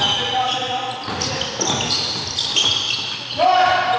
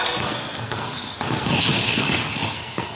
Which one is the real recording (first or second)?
first